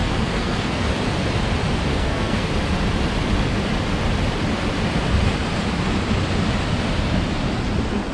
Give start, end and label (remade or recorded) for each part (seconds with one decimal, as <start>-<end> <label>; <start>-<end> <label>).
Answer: 0.0-0.9 remade; 0.9-1.9 recorded; 1.9-2.5 remade; 2.5-8.1 recorded